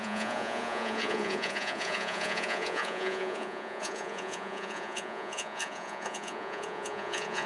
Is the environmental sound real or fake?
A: fake